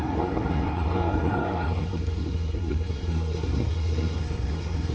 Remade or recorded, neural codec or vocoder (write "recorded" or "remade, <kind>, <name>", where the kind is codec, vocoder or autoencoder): remade, codec, SNAC